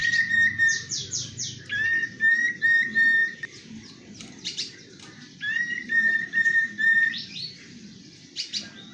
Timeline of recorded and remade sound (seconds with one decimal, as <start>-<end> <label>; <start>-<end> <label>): 0.0-1.6 remade; 1.6-3.2 recorded; 3.2-8.0 remade; 8.0-8.9 recorded